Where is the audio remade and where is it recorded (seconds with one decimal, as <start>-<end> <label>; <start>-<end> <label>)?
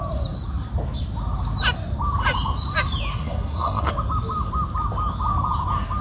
0.0-3.1 recorded; 3.1-3.9 remade; 3.9-6.0 recorded